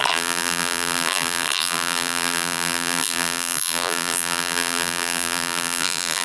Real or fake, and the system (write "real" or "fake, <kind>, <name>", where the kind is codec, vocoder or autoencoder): fake, vocoder, BigVGAN v2